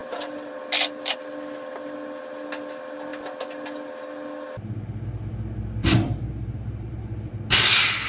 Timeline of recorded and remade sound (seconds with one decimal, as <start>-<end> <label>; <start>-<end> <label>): 0.0-0.5 remade; 0.5-5.8 recorded; 5.8-7.3 remade; 7.3-8.1 recorded